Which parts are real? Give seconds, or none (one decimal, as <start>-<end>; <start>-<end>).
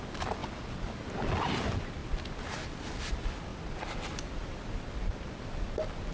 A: 0.0-6.1